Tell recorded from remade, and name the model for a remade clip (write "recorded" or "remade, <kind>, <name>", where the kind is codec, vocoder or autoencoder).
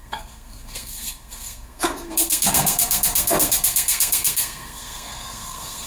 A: remade, codec, SNAC